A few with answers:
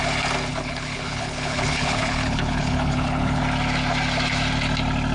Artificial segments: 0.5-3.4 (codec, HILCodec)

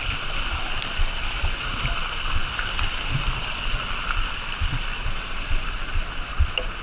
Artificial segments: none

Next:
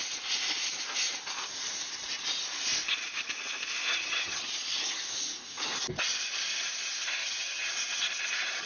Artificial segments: 3.9-4.5 (vocoder, HiFi-GAN); 7.2-7.7